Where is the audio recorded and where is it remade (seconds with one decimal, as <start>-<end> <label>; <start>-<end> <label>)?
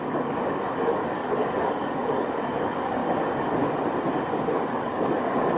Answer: 0.0-3.0 remade; 3.0-4.3 recorded; 4.3-5.6 remade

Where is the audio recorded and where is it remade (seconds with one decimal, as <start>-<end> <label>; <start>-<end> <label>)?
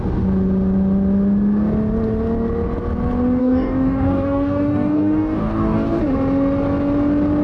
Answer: 0.0-3.4 recorded; 3.4-6.0 remade; 6.0-7.4 recorded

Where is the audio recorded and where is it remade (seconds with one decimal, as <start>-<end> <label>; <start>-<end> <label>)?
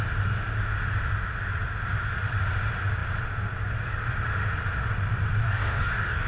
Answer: 0.0-5.4 recorded; 5.4-6.3 remade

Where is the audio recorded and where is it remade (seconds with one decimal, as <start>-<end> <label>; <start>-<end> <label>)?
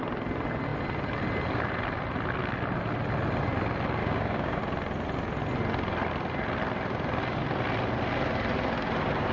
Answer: 0.0-4.0 recorded; 4.0-4.6 remade; 4.6-9.3 recorded